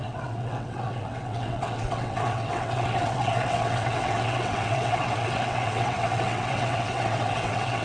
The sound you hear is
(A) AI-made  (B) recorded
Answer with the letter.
A